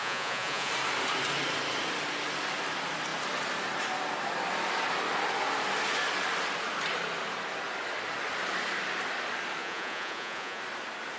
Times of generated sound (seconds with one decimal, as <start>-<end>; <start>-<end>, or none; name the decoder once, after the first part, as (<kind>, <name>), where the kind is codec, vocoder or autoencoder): 0.0-0.7 (vocoder, Vocos); 9.6-10.6

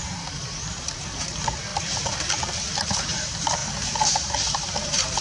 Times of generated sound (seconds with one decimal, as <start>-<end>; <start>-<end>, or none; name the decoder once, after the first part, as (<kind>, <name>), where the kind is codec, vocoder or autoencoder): 0.0-3.6 (vocoder, BigVGAN v2); 4.1-5.2

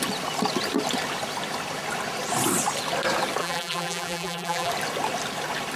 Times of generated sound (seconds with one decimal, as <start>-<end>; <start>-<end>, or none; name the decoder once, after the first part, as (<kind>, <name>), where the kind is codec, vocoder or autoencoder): 3.4-4.7 (vocoder, BigVGAN v2)

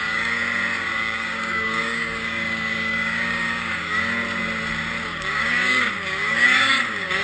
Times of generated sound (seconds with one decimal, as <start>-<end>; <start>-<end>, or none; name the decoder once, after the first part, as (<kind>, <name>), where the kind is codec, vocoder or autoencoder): 0.0-0.4 (codec, DAC); 1.0-4.2; 5.0-7.2

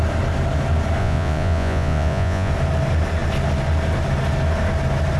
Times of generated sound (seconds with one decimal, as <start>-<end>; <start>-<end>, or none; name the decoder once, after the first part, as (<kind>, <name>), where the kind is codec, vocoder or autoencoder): 1.0-2.5 (vocoder, Vocos)

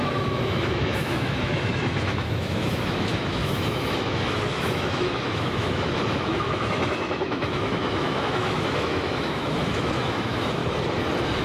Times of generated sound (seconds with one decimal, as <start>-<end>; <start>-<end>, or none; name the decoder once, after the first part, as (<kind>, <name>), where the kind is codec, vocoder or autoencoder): 0.0-10.6 (autoencoder, DAC-VAE)

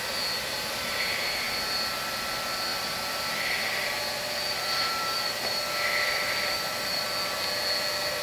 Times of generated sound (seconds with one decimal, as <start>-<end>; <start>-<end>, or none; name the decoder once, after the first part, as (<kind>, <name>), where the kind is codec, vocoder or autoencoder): 2.7-7.0 (vocoder, BigVGAN v2)